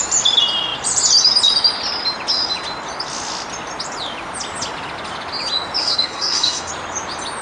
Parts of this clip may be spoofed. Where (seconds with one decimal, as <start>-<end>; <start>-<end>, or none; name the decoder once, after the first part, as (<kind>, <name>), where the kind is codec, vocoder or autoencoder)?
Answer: 5.8-6.7 (codec, SNAC)